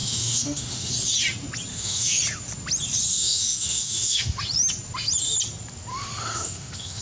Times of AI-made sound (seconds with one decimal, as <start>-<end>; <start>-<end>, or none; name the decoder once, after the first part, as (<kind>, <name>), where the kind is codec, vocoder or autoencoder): 0.0-0.9 (autoencoder, DAC-VAE); 1.7-2.2; 3.1-4.4; 5.9-7.0